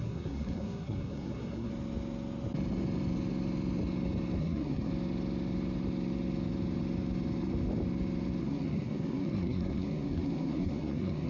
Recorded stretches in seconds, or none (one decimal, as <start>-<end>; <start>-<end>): 1.7-4.4; 4.9-8.4